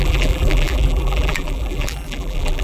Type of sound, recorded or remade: remade